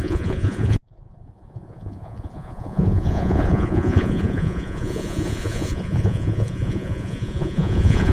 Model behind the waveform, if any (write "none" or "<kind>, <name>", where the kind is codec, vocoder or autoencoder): vocoder, Vocos